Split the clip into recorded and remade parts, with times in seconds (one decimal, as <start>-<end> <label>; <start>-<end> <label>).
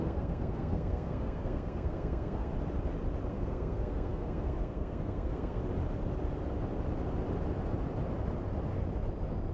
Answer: 0.0-2.5 remade; 2.5-3.3 recorded; 3.3-5.6 remade; 5.6-9.5 recorded